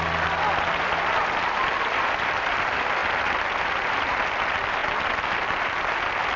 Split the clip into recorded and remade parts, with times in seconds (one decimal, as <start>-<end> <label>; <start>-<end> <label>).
0.0-3.0 remade; 3.0-3.6 recorded; 3.6-4.8 remade; 4.8-5.8 recorded; 5.8-6.4 remade